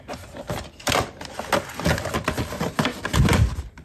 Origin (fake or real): real